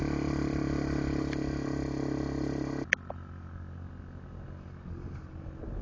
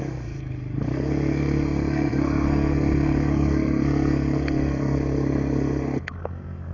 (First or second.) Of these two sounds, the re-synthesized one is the second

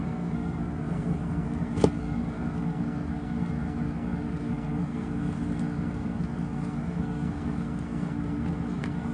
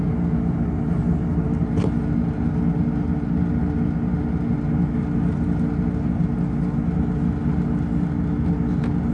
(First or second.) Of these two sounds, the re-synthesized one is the first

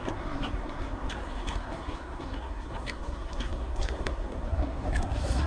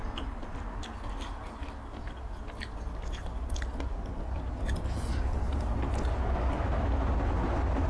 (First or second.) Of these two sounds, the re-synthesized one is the first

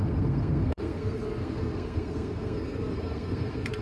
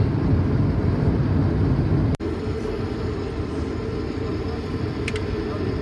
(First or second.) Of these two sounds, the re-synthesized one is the first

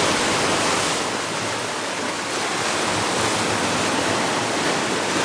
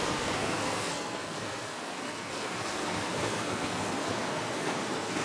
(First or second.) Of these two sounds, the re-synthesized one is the second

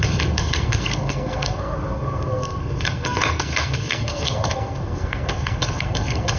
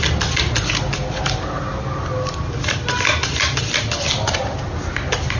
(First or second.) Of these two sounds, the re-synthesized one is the first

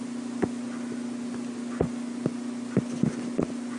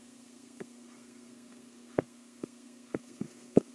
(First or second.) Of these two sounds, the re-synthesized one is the second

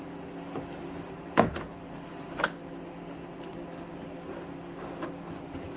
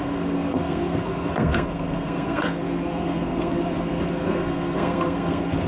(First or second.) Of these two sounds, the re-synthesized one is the second